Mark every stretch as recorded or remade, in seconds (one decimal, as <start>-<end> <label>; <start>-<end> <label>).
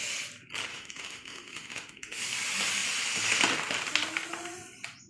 0.0-0.7 recorded; 0.7-2.2 remade; 2.2-5.1 recorded